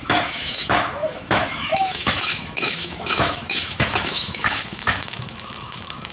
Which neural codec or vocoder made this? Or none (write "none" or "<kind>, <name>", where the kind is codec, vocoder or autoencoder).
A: autoencoder, DAC-VAE